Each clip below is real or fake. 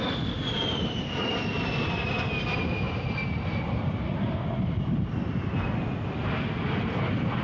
real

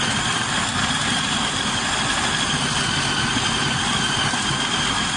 real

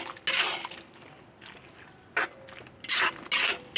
real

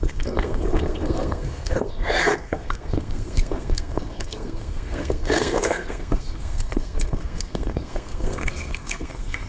fake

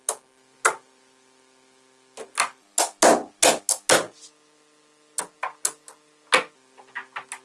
real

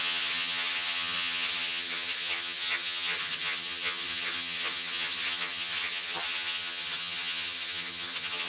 fake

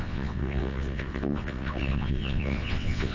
fake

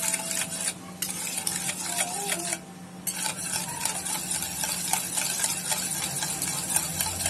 real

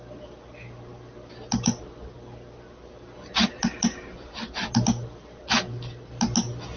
real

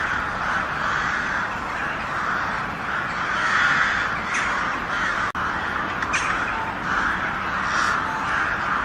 real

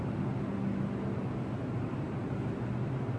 real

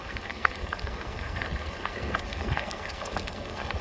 fake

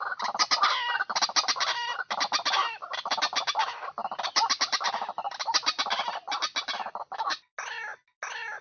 real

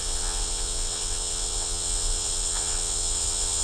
fake